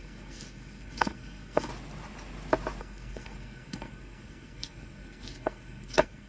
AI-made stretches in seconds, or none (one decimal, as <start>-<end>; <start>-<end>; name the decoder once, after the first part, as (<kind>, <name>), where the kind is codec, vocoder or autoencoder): 0.0-1.7 (codec, SNAC); 2.8-6.3